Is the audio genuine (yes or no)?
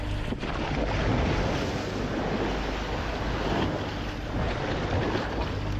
yes